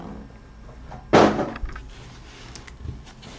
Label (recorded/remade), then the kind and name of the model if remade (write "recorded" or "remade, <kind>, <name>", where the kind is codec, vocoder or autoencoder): recorded